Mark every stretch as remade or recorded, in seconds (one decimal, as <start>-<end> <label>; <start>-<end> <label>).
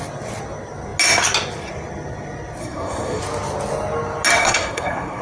0.0-2.6 recorded; 2.6-3.2 remade; 3.2-4.4 recorded; 4.4-5.2 remade